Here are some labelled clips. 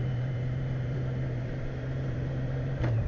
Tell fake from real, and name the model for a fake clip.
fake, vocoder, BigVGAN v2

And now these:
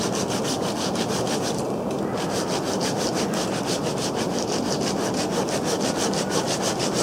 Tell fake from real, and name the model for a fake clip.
real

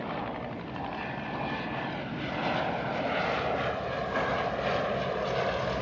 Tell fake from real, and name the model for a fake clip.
real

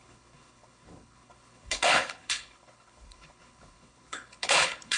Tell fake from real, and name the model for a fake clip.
fake, codec, HILCodec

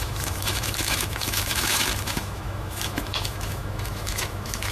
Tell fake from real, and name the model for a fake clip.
fake, autoencoder, DAC-VAE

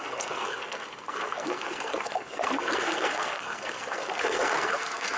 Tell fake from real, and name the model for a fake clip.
fake, codec, SNAC